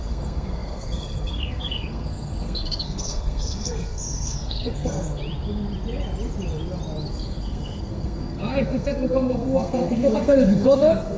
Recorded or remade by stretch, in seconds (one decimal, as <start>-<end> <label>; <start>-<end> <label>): 0.0-5.2 remade; 5.2-7.1 recorded; 7.1-11.2 remade